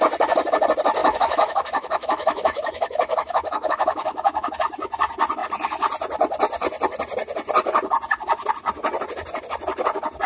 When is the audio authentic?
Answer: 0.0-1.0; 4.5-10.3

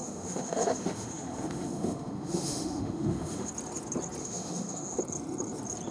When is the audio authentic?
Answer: 3.5-4.2; 5.0-5.9

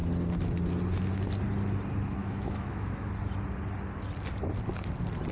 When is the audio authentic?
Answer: 0.0-2.2; 3.1-5.3

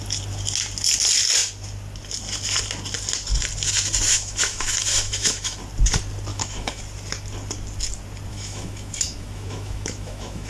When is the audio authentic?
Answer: 0.0-4.1; 5.6-6.3; 6.8-8.3

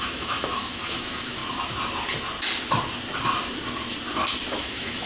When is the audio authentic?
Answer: 1.4-4.5

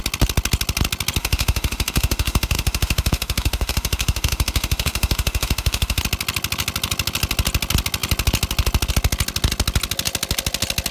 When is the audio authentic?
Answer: 0.0-1.2; 6.0-10.9